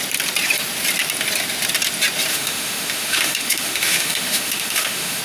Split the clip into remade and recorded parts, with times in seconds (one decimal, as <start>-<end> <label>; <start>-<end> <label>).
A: 0.0-2.3 recorded; 2.3-5.2 remade